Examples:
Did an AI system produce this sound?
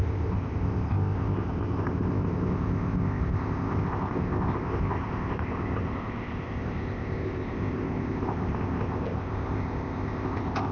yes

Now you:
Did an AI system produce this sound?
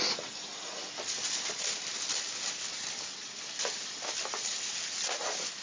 no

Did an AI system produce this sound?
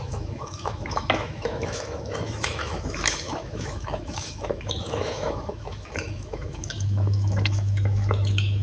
yes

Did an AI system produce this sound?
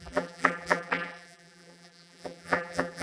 yes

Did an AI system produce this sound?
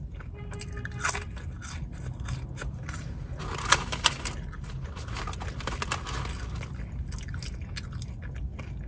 no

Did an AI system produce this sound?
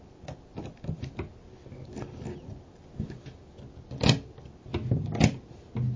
no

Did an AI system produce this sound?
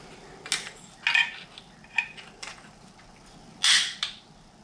no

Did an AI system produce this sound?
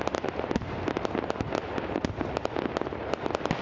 no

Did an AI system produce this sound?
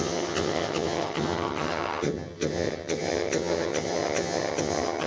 yes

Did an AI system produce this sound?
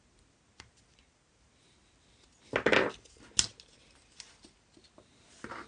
no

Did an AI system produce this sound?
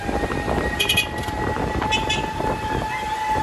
no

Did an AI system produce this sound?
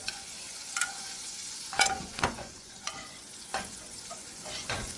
yes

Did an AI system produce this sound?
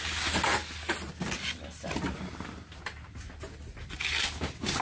no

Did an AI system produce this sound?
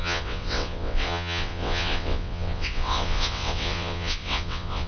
yes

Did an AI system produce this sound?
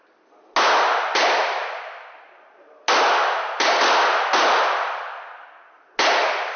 no